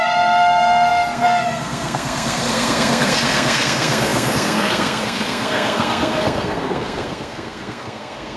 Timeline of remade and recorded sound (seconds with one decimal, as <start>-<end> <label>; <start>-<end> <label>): 0.0-8.4 remade